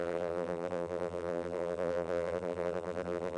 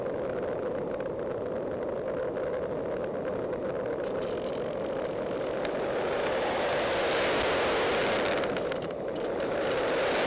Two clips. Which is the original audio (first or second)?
second